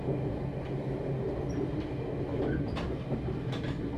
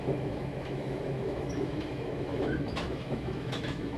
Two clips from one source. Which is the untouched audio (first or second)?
first